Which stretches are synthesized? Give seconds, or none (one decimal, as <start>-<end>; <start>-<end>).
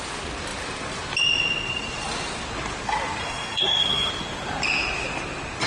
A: 3.2-4.1